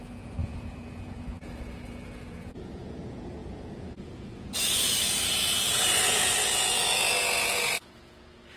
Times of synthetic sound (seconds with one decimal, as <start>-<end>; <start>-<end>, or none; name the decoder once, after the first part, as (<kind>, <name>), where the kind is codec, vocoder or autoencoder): 0.0-8.6 (vocoder, Vocos)